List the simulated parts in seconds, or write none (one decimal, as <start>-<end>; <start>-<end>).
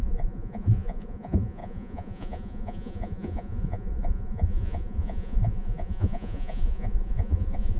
0.0-7.8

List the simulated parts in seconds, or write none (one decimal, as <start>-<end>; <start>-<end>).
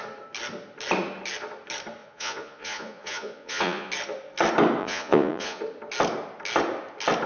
2.0-3.9; 4.8-5.6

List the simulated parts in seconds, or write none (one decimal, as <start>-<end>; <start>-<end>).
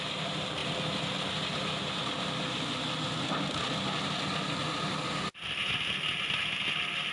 none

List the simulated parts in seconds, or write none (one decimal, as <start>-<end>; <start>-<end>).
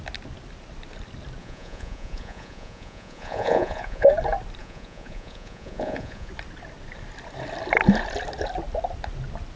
1.4-4.1; 4.6-6.3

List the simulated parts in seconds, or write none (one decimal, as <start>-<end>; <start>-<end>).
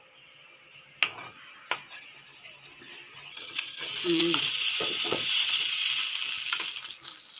3.3-5.8